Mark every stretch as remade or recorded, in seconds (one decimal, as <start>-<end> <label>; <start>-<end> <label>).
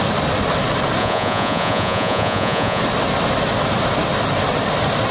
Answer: 0.0-1.0 recorded; 1.0-2.8 remade; 2.8-5.1 recorded